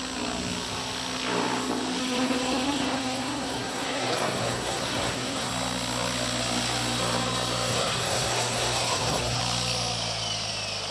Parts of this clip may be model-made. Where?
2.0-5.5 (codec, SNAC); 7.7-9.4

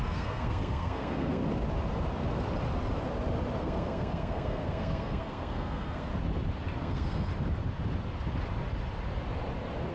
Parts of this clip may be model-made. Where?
0.0-1.4 (codec, SNAC); 3.6-6.1; 6.8-7.3

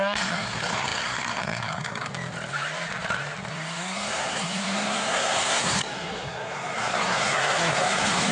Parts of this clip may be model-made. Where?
0.0-2.1 (codec, SNAC); 3.5-8.3

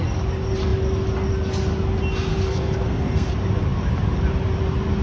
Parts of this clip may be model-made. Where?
2.3-3.3 (codec, SNAC)

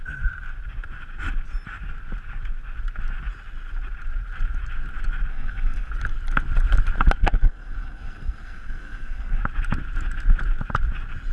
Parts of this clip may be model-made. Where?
5.3-5.9 (codec, SNAC); 7.2-9.4

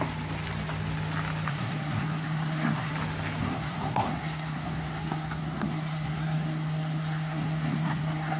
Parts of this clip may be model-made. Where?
1.5-2.9 (codec, SNAC); 3.4-8.4

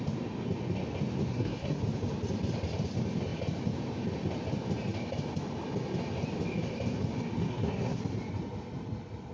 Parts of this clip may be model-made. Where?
1.3-1.8 (codec, SNAC); 7.5-8.0

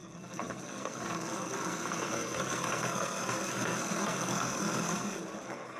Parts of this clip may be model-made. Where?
0.0-5.8 (codec, SNAC)